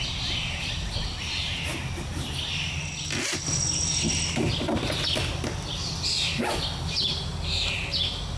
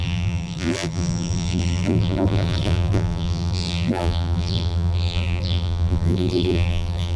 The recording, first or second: first